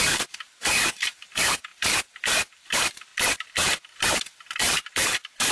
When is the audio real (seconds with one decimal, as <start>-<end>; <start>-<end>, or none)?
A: 3.1-4.2